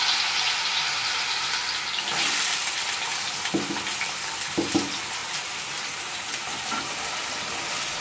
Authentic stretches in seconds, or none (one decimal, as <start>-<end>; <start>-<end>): 0.0-5.2; 6.8-8.0